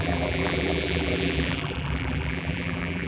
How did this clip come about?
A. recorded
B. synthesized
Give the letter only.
B